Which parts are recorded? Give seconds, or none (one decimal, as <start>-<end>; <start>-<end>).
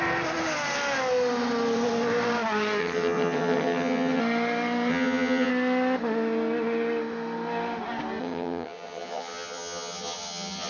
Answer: 0.0-2.8; 4.2-4.9; 5.5-8.2